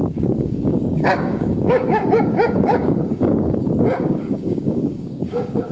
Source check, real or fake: fake